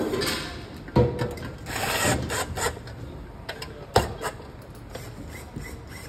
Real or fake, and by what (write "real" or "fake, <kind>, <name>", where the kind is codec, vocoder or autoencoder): real